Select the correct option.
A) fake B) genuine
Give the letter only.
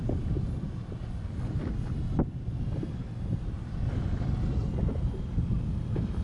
B